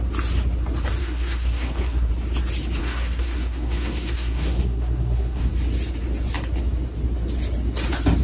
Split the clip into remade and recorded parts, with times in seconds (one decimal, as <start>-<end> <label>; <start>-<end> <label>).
0.0-1.0 recorded; 1.0-2.1 remade; 2.1-2.8 recorded; 2.8-5.5 remade; 5.5-8.2 recorded